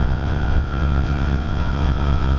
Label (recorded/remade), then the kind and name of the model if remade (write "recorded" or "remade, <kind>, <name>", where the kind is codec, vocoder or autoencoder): remade, vocoder, WaveNeXt